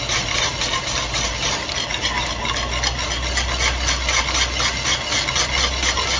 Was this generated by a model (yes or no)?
no